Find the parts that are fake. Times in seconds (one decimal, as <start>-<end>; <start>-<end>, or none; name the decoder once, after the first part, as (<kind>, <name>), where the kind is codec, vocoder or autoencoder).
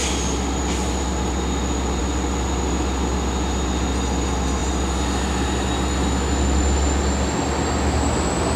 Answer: none